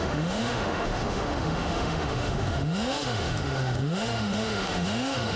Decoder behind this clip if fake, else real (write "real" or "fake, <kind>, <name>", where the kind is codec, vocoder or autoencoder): fake, autoencoder, DAC-VAE